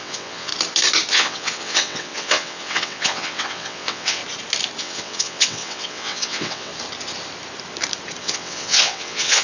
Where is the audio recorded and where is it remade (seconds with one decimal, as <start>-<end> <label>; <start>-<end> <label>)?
0.0-0.5 remade; 0.5-1.1 recorded; 1.1-4.2 remade; 4.2-4.8 recorded; 4.8-6.7 remade; 6.7-8.2 recorded; 8.2-9.4 remade

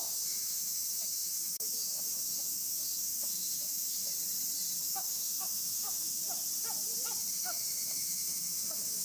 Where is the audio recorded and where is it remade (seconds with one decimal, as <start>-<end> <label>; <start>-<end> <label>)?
0.0-4.1 remade; 4.1-4.8 recorded; 4.8-6.2 remade; 6.2-7.3 recorded; 7.3-9.0 remade

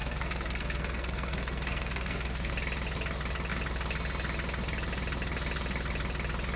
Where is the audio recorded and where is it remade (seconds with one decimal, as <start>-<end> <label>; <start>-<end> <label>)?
0.0-2.5 remade; 2.5-6.6 recorded

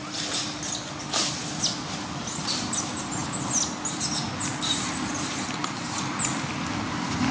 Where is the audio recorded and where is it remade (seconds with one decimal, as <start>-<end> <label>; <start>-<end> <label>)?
0.0-7.3 recorded

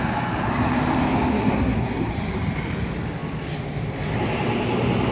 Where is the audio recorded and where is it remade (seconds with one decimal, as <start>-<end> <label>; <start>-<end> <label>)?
0.0-1.3 recorded; 1.3-2.1 remade; 2.1-5.1 recorded

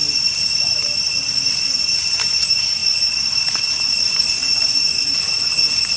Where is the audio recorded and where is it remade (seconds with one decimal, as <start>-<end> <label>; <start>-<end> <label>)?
0.0-6.0 recorded